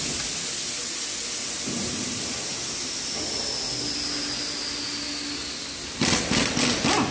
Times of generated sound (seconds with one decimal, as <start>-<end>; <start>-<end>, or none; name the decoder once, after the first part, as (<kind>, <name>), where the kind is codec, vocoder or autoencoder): 1.4-2.9 (vocoder, BigVGAN v2)